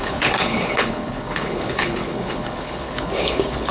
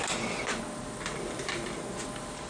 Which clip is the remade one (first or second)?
first